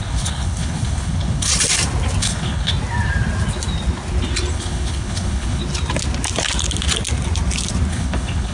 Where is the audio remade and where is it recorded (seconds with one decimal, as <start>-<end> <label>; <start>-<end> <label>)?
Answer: 0.0-1.5 remade; 1.5-2.2 recorded; 2.2-2.7 remade; 2.7-4.5 recorded; 4.5-5.6 remade; 5.6-7.9 recorded; 7.9-8.5 remade

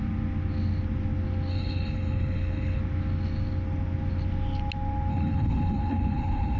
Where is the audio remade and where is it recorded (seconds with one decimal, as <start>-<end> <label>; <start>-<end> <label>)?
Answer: 0.0-1.5 recorded; 1.5-2.8 remade; 2.8-5.1 recorded; 5.1-6.6 remade

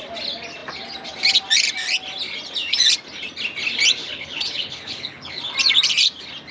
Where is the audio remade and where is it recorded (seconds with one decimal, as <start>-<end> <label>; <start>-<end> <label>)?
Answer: 0.0-4.0 recorded; 4.0-5.4 remade; 5.4-6.5 recorded